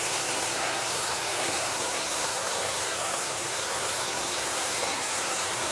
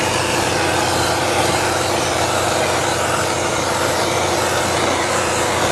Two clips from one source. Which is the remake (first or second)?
first